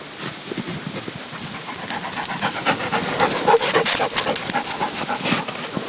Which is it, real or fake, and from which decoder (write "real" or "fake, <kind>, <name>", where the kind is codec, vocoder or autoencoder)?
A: real